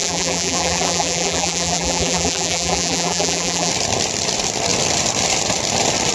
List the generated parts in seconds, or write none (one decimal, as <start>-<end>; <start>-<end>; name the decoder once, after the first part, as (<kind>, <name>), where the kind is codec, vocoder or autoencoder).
0.0-3.7 (vocoder, BigVGAN v2)